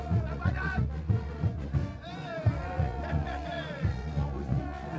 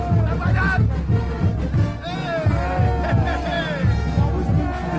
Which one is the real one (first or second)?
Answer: second